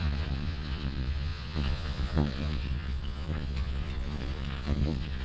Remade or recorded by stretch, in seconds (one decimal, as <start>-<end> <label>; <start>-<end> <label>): 0.0-5.2 remade